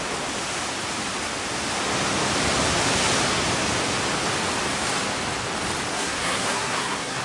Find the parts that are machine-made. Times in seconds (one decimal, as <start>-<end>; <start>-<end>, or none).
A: 5.9-7.2